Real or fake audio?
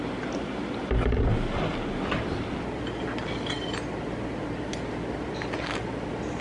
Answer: real